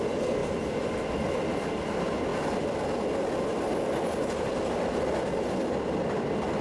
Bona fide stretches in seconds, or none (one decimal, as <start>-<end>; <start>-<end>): 0.0-6.6